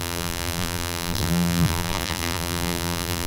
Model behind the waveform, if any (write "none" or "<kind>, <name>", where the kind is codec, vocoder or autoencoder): vocoder, BigVGAN v2